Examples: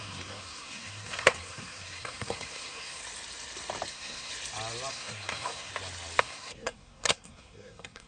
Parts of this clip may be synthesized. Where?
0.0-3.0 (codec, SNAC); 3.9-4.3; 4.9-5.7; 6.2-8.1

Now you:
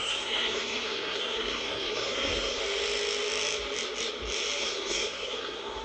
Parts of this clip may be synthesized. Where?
0.0-2.6 (codec, SNAC); 4.6-5.8

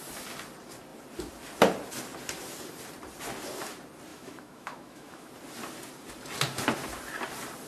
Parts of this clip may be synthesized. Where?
4.1-5.3 (autoencoder, DAC-VAE)

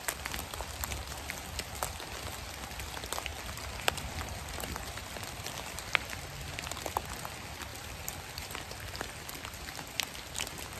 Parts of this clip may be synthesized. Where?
3.3-6.1 (vocoder, BigVGAN v2); 7.7-9.0